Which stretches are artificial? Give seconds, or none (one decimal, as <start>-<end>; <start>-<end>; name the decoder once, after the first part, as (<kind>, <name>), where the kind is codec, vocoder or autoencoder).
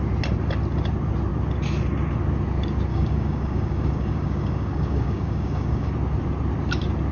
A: 2.9-5.9 (codec, DAC)